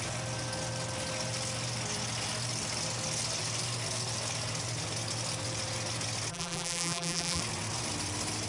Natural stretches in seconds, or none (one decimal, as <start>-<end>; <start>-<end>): 0.0-6.3; 7.4-8.5